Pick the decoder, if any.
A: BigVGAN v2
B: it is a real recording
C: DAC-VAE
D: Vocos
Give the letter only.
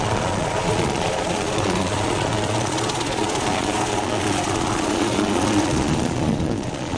D